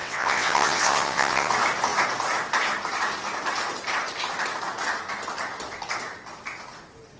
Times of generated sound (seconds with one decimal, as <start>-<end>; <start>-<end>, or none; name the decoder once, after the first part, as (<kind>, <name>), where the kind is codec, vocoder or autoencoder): 0.0-1.5 (vocoder, WaveNeXt)